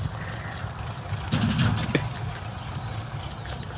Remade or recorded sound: recorded